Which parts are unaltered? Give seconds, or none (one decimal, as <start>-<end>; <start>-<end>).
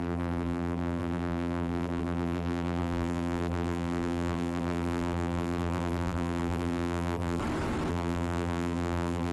7.4-7.9